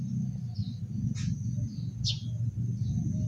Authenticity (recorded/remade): recorded